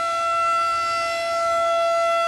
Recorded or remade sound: recorded